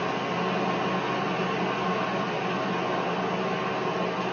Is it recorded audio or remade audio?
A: recorded